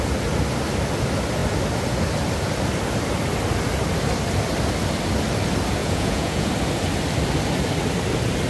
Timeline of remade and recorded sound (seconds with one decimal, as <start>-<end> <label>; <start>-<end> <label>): 0.0-5.8 recorded; 5.8-6.5 remade; 6.5-8.5 recorded